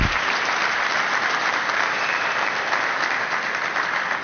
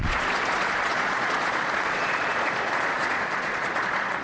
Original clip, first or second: first